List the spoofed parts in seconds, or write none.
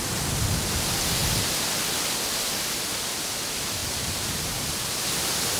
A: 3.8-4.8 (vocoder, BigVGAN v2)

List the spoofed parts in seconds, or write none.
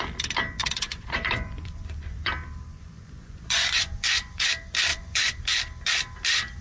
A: 0.6-2.3 (vocoder, Vocos); 2.7-4.5; 4.9-5.4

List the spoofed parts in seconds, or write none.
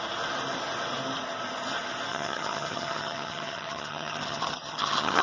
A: 2.1-5.2 (vocoder, HiFi-GAN)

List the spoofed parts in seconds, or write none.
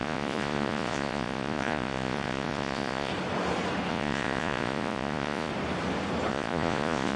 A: 0.0-3.1 (vocoder, Vocos); 3.9-5.5; 6.3-7.2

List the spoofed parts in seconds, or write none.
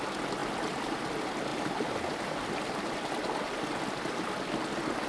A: none